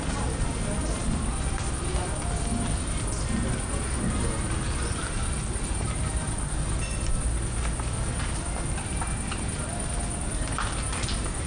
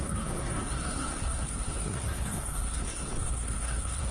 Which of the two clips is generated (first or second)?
second